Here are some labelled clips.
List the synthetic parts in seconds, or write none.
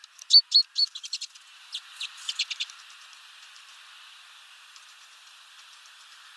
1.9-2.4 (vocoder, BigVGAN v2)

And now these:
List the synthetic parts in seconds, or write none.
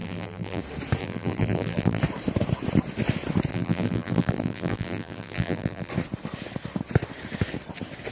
0.0-0.6 (vocoder, BigVGAN v2); 1.0-2.0; 3.5-5.9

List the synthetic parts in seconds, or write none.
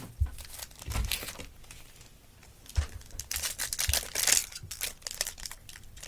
2.4-3.6 (vocoder, BigVGAN v2); 4.4-5.6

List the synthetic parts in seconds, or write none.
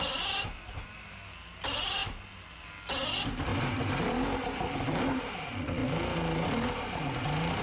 3.5-4.1 (vocoder, BigVGAN v2)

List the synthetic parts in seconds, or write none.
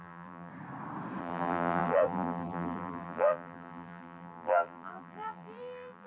0.0-0.5 (vocoder, BigVGAN v2); 1.2-6.1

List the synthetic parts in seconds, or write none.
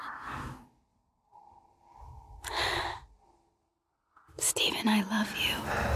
0.9-4.5 (vocoder, BigVGAN v2)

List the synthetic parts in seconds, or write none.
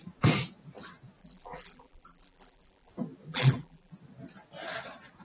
1.2-2.9 (vocoder, BigVGAN v2); 3.3-3.9